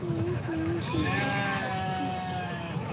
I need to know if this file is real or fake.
fake